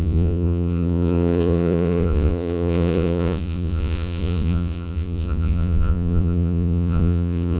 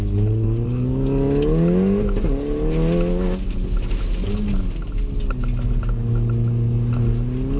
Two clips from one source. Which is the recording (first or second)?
second